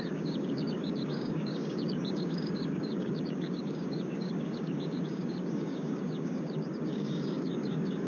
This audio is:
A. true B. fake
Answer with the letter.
B